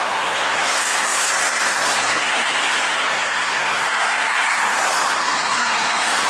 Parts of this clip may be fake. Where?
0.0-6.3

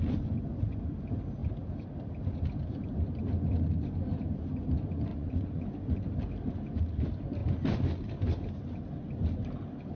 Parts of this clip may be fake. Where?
5.1-5.6

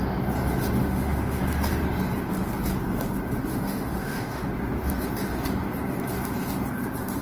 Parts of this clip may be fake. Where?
0.8-1.4; 3.5-4.5

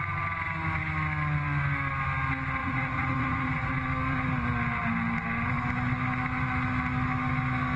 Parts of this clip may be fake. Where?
2.6-3.7

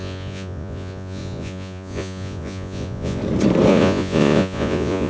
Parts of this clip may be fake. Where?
0.0-3.2; 3.7-5.1

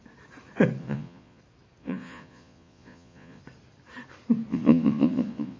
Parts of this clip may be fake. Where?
0.8-1.4; 1.8-3.4; 4.5-5.6

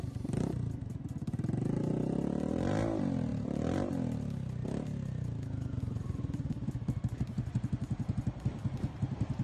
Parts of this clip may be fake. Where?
none

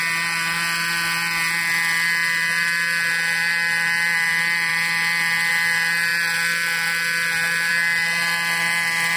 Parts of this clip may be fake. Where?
none